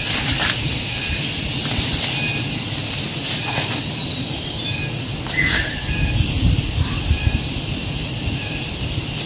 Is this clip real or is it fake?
real